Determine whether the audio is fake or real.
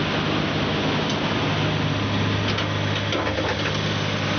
real